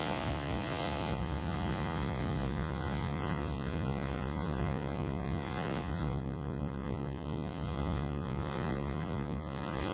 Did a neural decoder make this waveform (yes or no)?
yes